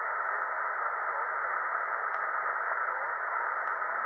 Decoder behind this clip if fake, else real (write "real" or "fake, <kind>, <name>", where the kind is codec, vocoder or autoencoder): real